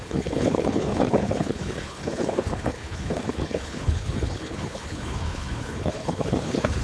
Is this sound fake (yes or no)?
yes